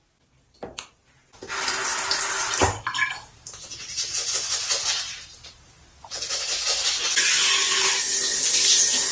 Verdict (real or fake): real